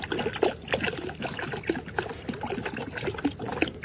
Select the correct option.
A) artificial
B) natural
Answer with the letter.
B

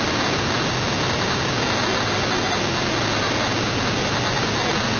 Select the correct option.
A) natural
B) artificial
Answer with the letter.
A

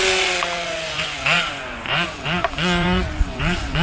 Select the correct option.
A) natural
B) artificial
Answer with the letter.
B